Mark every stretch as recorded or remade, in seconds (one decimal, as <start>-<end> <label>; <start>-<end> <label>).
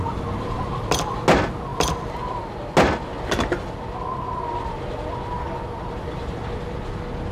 0.0-7.3 recorded